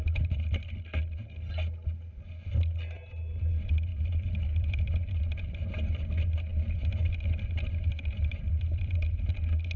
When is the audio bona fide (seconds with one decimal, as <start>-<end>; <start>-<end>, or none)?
0.0-3.9; 5.2-6.5; 9.3-9.8